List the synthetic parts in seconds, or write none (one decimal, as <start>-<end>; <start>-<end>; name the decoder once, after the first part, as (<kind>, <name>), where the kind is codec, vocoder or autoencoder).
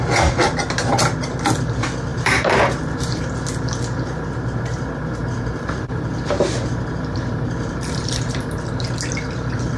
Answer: 2.1-3.2 (vocoder, BigVGAN v2); 5.2-8.3